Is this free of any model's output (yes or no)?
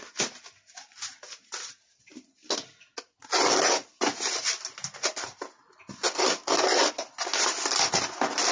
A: yes